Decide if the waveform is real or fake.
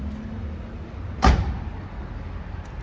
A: real